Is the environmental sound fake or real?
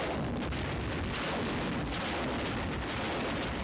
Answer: real